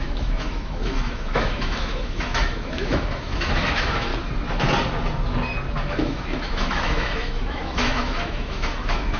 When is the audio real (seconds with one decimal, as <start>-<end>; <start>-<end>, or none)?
4.1-5.9